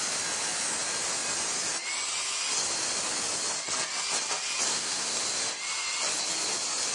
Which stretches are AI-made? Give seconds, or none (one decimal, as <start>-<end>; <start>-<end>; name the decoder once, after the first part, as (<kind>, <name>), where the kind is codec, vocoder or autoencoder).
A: 4.7-5.2 (codec, SNAC)